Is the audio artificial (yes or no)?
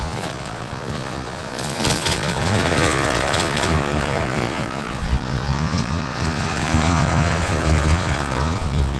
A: yes